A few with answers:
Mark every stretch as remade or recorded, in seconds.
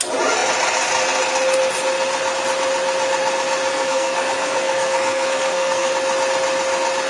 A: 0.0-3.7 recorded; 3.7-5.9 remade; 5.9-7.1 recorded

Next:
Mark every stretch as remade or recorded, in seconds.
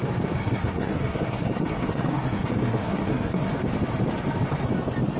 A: 0.0-0.4 recorded; 0.4-3.5 remade; 3.5-5.2 recorded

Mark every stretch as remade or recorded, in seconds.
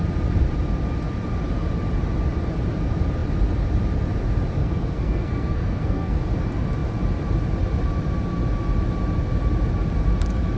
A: 0.0-4.6 recorded; 4.6-6.2 remade; 6.2-10.6 recorded